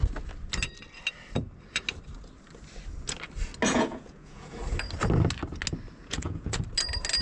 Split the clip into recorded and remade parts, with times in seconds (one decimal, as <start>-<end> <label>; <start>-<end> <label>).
0.0-3.7 recorded; 3.7-4.6 remade; 4.6-6.0 recorded; 6.0-6.6 remade; 6.6-7.2 recorded